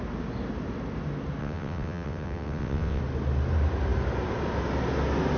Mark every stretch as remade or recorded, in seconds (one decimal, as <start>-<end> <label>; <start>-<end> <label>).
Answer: 0.0-1.4 recorded; 1.4-3.0 remade; 3.0-5.4 recorded